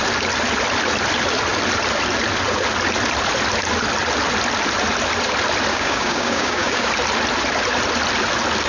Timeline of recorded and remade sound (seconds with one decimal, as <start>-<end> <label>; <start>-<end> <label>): 0.0-5.7 recorded; 5.7-6.9 remade; 6.9-8.7 recorded